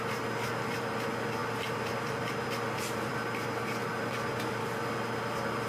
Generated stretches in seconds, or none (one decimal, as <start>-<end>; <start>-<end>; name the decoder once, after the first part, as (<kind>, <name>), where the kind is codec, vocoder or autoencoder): none